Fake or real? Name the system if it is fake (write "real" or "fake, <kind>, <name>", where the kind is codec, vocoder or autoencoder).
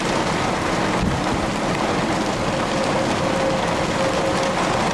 real